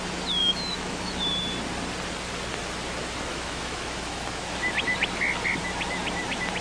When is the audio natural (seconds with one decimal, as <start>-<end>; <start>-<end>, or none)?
0.0-0.4; 1.1-3.3; 4.4-6.6